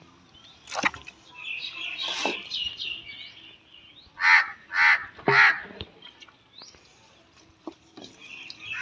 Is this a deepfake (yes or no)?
no